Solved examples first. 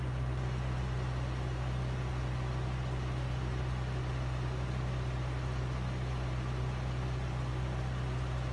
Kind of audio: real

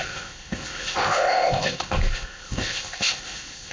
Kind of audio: fake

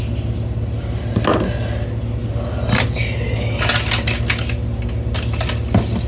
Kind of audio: real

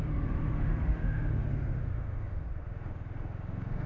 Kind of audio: fake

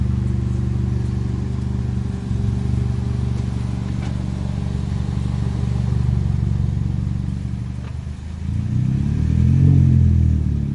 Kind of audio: real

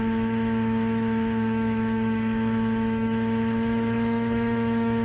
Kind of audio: fake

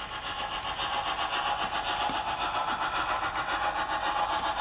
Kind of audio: real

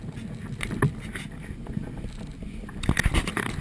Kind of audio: real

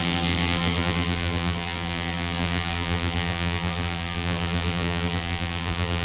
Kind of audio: fake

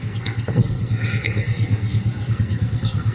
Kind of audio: fake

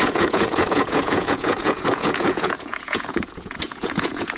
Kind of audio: fake